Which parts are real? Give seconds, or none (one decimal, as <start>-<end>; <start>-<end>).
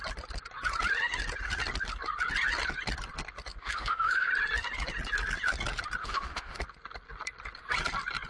0.0-3.6; 4.3-6.0; 6.6-8.3